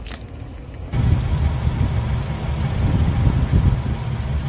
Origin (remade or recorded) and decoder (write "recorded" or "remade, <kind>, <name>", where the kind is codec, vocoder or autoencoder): recorded